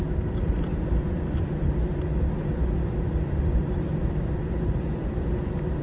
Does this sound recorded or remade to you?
recorded